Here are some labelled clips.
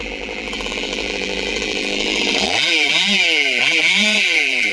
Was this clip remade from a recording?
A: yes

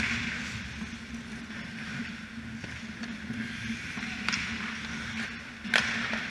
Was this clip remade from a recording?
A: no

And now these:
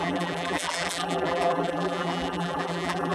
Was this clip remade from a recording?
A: yes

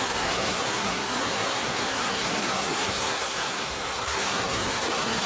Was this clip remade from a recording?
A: yes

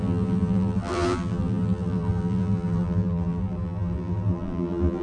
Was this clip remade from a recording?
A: yes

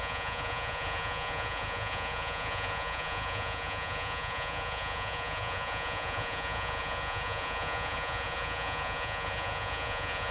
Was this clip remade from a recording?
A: yes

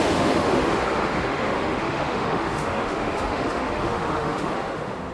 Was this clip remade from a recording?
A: yes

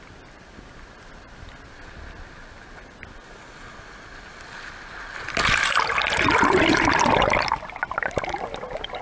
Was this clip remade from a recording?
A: no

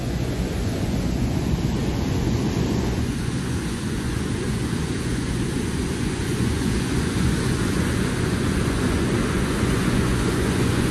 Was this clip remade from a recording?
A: yes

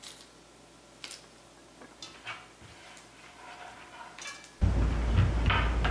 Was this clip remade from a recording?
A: no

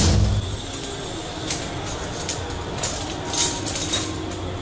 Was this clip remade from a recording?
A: no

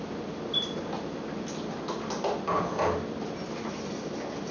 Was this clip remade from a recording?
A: no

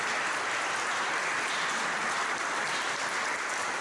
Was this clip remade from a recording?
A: no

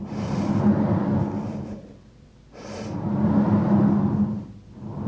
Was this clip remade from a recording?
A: no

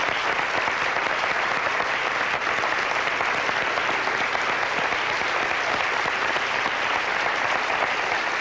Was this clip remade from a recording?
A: no